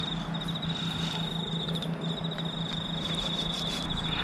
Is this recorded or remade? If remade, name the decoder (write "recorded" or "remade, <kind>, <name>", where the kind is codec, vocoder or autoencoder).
recorded